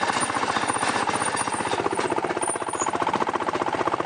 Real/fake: real